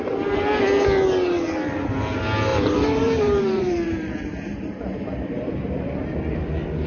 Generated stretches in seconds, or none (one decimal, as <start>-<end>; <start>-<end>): 2.5-6.0